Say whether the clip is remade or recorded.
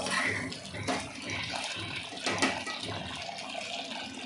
recorded